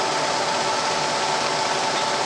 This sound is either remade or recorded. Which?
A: recorded